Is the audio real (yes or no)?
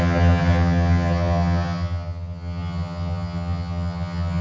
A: no